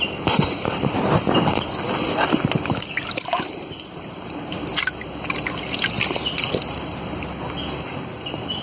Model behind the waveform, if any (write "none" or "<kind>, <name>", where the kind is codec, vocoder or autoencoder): none